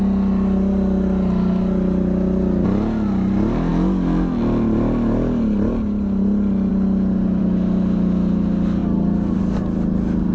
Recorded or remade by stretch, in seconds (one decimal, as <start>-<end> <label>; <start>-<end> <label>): 0.0-10.3 recorded